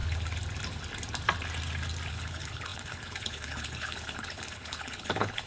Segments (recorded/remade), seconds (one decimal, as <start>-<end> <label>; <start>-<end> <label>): 0.0-2.1 recorded; 2.1-5.5 remade